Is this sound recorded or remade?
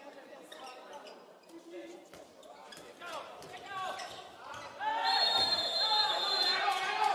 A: remade